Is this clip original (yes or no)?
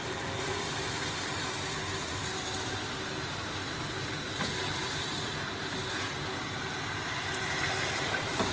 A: yes